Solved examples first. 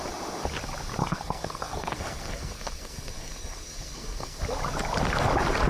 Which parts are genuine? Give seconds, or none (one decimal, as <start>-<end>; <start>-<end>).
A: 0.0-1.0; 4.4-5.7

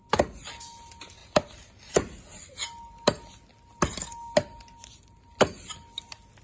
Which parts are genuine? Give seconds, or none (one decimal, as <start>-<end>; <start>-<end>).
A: 0.0-6.4

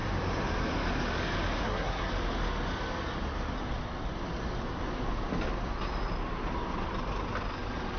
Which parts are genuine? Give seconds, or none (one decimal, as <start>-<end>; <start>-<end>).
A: 0.0-1.6; 2.1-8.0

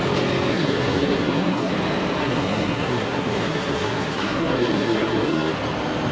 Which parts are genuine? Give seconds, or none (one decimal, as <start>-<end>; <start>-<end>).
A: 0.0-0.5; 1.7-2.2; 5.5-6.1

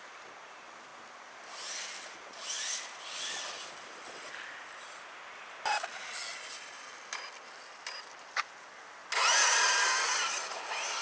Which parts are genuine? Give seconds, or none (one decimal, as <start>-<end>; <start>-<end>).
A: 0.0-11.0

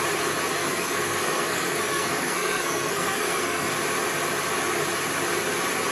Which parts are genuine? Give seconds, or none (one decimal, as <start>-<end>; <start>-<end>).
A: 0.0-0.6; 3.7-5.9

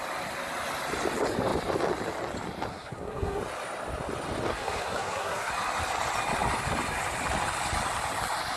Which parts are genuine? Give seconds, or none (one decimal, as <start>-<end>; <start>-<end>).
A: 0.0-2.7; 3.4-4.5; 5.5-8.6